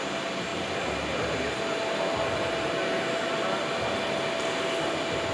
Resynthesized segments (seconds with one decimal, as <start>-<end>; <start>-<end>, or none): none